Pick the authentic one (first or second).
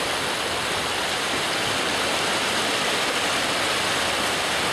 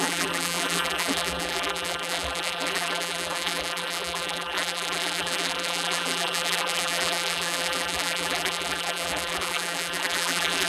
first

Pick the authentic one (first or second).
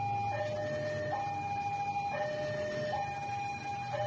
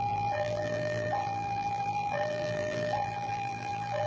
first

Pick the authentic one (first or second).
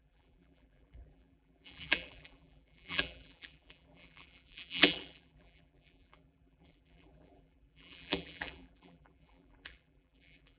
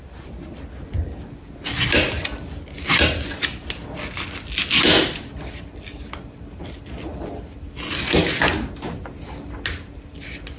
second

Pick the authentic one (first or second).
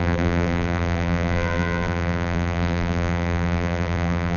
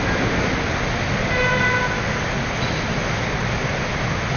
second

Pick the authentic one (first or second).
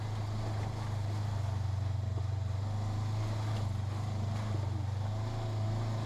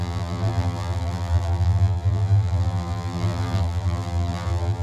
first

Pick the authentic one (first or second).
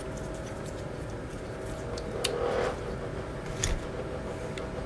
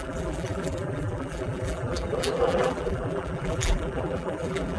first